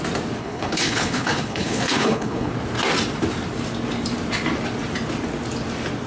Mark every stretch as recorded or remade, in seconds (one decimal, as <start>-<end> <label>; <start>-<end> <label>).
0.0-0.4 recorded; 0.4-2.5 remade; 2.5-6.1 recorded